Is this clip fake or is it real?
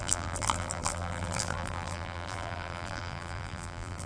fake